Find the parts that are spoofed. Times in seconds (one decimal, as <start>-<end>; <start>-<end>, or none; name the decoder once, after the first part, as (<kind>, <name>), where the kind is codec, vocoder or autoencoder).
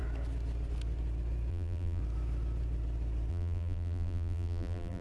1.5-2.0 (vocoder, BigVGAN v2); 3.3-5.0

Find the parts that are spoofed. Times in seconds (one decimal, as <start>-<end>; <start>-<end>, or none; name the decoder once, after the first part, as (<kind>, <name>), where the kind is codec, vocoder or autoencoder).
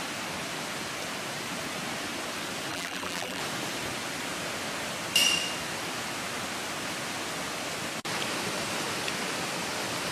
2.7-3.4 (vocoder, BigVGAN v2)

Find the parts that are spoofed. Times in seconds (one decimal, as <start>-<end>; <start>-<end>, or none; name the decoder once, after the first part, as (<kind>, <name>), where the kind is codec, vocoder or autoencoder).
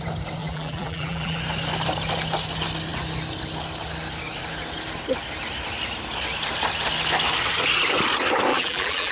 0.4-1.4 (vocoder, BigVGAN v2); 8.5-9.1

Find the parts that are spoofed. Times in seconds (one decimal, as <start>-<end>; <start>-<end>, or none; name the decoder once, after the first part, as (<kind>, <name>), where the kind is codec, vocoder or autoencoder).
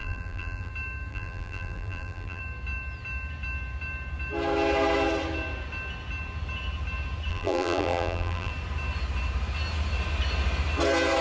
0.0-0.7 (vocoder, BigVGAN v2); 1.1-2.4; 7.3-8.5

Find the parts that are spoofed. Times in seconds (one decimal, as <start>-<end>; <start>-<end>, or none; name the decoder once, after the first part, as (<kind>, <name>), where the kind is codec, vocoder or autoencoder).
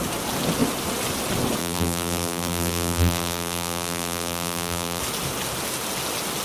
1.6-5.0 (vocoder, BigVGAN v2)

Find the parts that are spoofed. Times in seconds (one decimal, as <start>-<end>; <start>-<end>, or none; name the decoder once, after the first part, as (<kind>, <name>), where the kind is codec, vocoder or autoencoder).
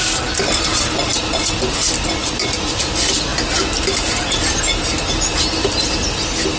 none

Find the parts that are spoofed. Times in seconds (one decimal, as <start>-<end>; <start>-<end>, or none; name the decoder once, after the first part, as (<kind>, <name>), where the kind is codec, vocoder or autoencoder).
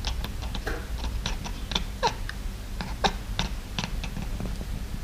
none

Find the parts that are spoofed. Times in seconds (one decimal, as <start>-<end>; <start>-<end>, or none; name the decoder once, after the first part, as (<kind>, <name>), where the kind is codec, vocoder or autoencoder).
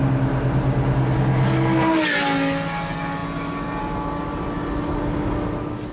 none